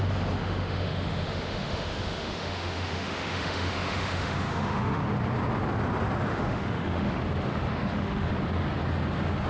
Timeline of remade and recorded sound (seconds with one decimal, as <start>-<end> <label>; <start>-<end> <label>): 0.0-0.4 recorded; 0.4-5.0 remade; 5.0-6.3 recorded; 6.3-7.2 remade; 7.2-7.7 recorded; 7.7-8.3 remade; 8.3-9.5 recorded